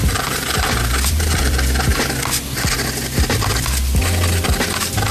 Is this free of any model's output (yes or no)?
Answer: no